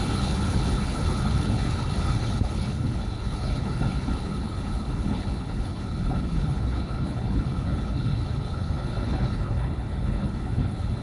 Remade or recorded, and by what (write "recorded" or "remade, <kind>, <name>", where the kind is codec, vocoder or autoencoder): remade, codec, HILCodec